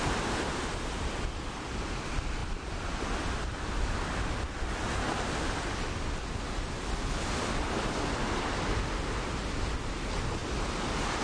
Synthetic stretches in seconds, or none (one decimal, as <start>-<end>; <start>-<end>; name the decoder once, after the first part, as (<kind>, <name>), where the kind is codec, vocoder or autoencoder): none